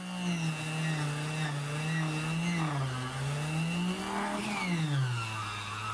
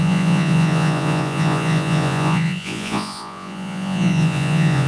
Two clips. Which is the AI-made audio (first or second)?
second